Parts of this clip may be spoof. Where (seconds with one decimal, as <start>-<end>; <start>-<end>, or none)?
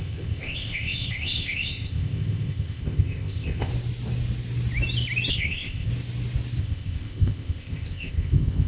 0.0-3.7; 5.3-5.9; 6.6-8.7